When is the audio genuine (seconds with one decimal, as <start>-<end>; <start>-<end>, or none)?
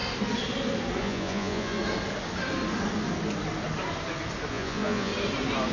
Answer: 0.0-1.0; 1.8-4.5; 5.1-5.7